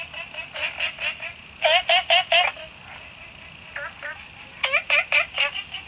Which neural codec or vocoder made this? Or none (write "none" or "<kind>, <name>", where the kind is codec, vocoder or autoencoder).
none